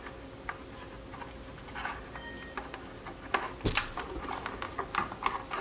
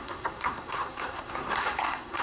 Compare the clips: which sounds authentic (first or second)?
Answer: first